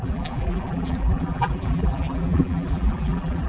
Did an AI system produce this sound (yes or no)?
yes